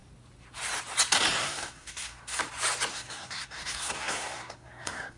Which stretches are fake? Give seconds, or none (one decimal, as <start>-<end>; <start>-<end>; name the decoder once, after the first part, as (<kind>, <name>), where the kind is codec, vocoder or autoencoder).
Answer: 1.4-2.4 (codec, SNAC); 2.9-5.2